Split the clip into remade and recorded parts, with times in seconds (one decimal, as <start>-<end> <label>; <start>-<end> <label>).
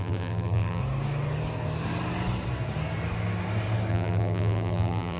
0.0-0.8 remade; 0.8-3.9 recorded; 3.9-5.2 remade